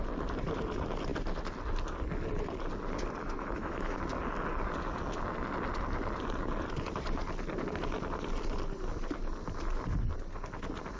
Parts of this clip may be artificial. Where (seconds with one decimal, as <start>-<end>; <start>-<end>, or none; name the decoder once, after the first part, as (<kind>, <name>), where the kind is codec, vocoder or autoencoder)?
3.2-4.0 (autoencoder, DAC-VAE)